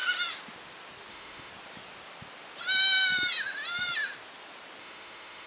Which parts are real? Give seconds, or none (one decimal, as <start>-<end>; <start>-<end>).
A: 0.0-1.1; 1.5-4.8